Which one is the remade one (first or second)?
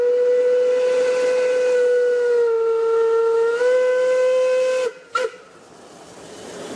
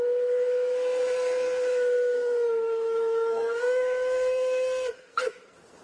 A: second